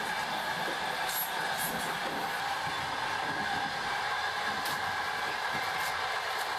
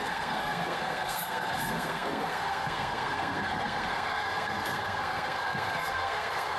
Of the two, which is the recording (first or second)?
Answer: first